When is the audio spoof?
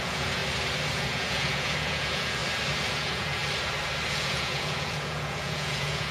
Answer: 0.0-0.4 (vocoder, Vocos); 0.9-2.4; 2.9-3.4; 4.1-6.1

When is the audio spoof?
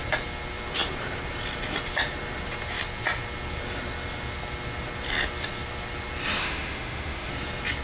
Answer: 6.4-7.3 (autoencoder, DAC-VAE)